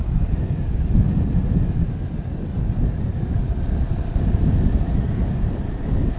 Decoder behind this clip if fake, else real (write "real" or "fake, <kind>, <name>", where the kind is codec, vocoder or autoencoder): real